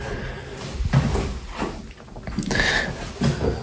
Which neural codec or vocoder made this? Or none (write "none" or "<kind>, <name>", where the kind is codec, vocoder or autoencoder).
none